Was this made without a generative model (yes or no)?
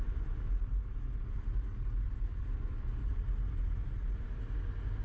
yes